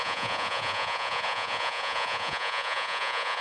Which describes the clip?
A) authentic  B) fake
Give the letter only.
B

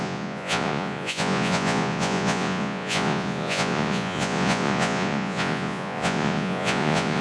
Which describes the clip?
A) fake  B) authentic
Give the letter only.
A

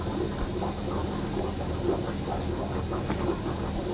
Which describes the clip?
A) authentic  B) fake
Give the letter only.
A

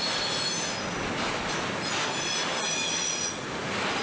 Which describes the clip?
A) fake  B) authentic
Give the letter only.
B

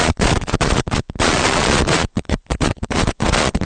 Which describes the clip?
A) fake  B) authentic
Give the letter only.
A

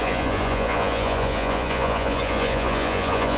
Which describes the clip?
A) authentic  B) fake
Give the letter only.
B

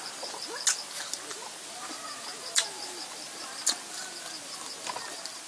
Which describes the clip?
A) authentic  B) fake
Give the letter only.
A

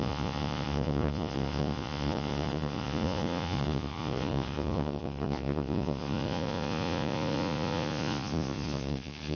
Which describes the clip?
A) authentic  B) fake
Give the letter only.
B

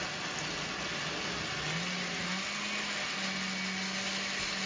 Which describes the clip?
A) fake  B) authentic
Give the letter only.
B